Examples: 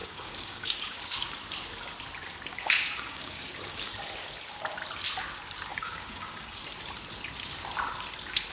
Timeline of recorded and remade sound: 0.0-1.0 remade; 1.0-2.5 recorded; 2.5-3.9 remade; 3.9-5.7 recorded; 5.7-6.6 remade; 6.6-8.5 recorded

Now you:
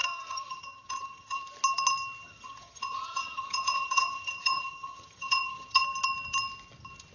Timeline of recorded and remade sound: 0.0-1.4 remade; 1.4-2.2 recorded; 2.2-5.8 remade; 5.8-7.1 recorded

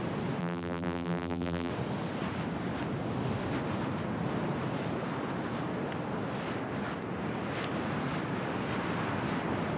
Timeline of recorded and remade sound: 0.0-0.4 recorded; 0.4-1.7 remade; 1.7-9.8 recorded

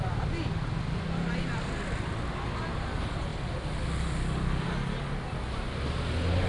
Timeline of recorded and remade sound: 0.0-6.5 recorded